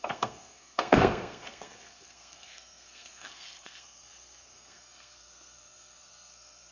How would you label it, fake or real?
fake